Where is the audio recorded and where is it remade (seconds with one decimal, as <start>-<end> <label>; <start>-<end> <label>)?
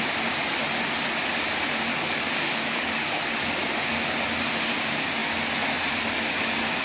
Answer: 0.0-1.9 recorded; 1.9-3.3 remade; 3.3-6.8 recorded